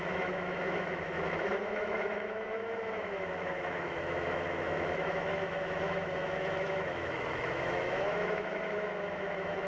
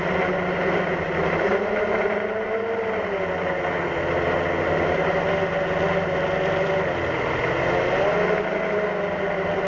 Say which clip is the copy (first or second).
first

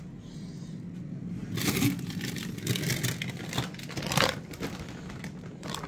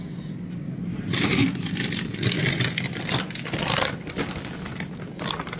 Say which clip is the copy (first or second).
second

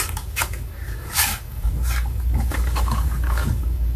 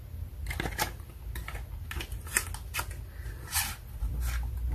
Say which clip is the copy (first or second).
first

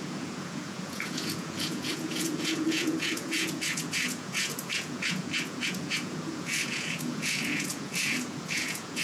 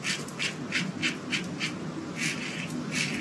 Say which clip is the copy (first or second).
first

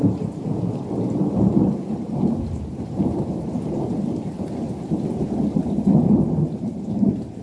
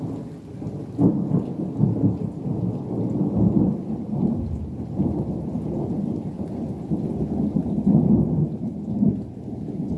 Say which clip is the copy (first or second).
first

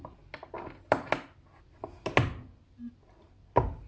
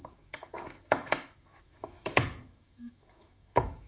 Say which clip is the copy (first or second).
second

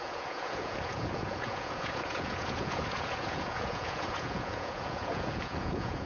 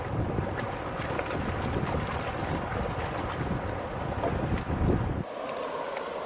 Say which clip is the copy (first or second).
first